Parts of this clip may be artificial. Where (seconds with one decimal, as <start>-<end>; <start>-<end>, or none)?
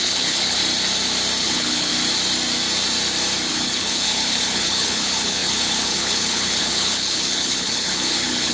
0.0-0.6; 1.4-1.9; 3.5-8.5